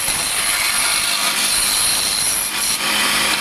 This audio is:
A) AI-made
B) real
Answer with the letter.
B